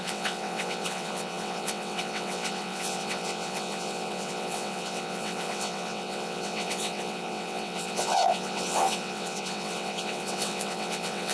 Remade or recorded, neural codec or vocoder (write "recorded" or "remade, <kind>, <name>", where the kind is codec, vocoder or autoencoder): remade, vocoder, WaveNeXt